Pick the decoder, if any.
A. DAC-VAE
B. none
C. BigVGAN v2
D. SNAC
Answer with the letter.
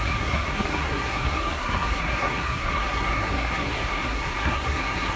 D